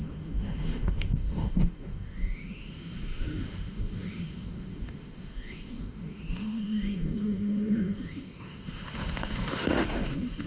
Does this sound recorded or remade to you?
remade